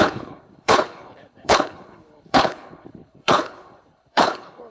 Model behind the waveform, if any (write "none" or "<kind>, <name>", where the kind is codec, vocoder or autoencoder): codec, HILCodec